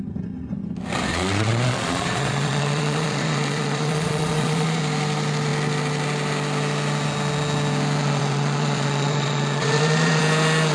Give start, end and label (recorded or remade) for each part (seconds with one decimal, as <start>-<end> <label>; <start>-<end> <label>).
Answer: 0.0-1.1 recorded; 1.1-4.8 remade; 4.8-8.0 recorded; 8.0-10.2 remade; 10.2-10.7 recorded